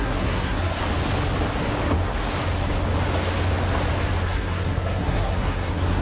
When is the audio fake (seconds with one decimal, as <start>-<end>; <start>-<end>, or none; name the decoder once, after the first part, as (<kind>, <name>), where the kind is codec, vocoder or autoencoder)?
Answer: 0.0-0.8 (codec, SNAC); 4.2-6.0